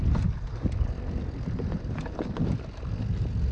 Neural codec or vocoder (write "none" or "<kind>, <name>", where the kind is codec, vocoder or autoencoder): none